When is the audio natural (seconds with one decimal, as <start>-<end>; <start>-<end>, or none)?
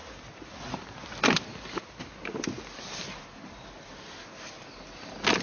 0.0-5.4